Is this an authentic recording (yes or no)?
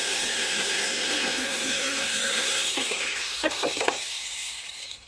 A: no